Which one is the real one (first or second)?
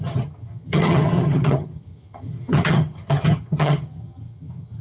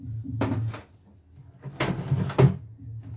second